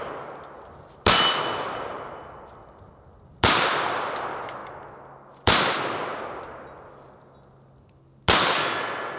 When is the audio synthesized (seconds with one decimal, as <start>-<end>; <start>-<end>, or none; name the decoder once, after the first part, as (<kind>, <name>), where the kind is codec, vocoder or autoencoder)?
none